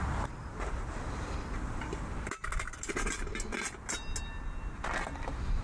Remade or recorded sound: recorded